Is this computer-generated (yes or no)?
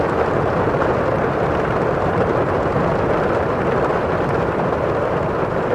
no